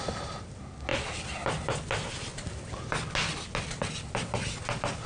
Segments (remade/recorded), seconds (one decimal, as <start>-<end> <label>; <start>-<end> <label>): 0.0-5.1 recorded